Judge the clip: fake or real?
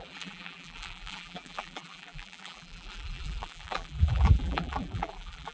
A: fake